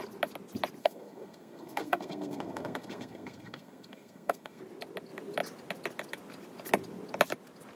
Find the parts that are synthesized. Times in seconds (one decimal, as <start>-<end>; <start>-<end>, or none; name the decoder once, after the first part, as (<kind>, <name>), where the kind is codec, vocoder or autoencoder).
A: 0.8-4.6 (codec, SNAC)